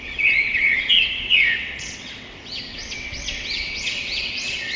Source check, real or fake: fake